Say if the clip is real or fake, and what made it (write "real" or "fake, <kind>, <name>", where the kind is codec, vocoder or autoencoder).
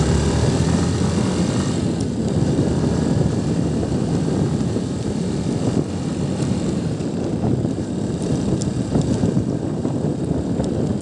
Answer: fake, vocoder, BigVGAN v2